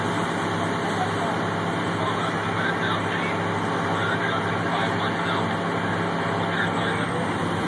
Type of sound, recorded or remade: recorded